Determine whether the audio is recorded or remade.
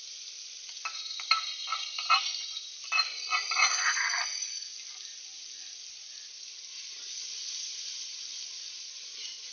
recorded